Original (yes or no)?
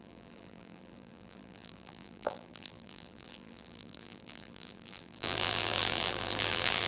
no